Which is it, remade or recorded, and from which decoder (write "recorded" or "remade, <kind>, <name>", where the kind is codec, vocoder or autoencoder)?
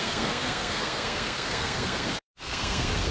remade, codec, SNAC